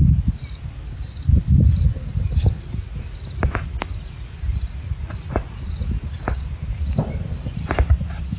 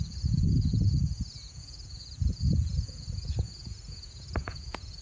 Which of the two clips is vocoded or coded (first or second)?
second